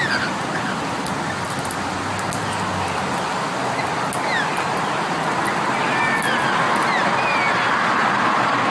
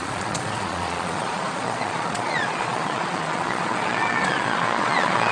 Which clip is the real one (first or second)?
first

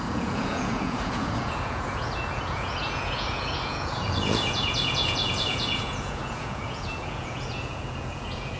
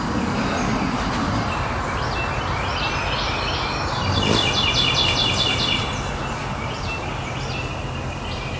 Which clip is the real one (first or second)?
second